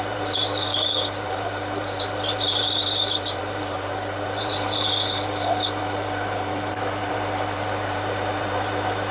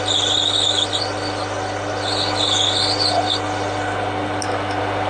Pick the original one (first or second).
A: second